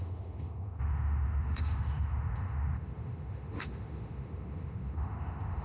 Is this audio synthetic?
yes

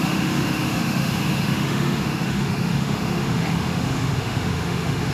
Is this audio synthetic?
yes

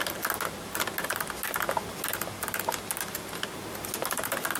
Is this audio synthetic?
no